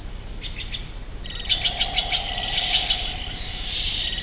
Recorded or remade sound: recorded